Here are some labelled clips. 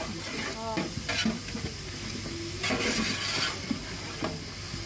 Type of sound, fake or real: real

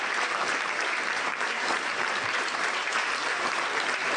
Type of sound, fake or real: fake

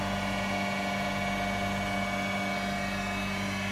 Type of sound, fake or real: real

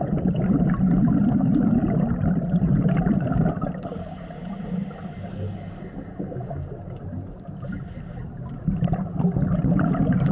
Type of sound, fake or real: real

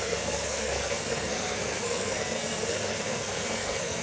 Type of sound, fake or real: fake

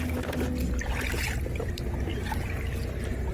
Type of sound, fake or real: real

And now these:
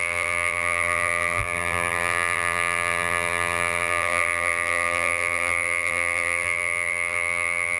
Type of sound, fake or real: fake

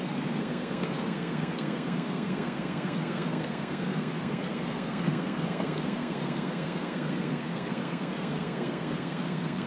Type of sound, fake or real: fake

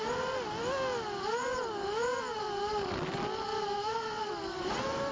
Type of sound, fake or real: real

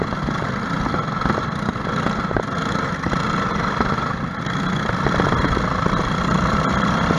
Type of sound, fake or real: real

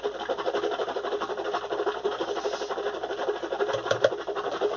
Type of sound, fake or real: fake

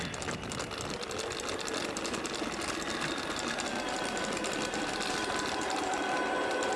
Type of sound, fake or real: real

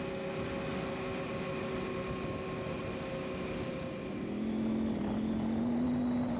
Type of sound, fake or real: real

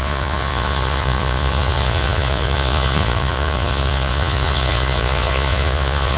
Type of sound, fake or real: fake